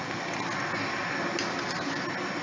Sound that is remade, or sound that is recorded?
recorded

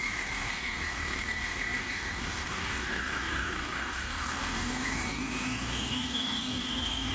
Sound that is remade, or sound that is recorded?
remade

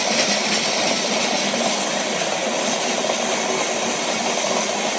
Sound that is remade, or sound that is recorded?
recorded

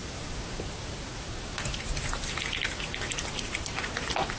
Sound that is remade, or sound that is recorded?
recorded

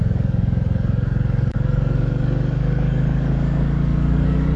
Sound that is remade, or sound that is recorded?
remade